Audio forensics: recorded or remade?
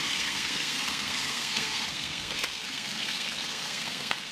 remade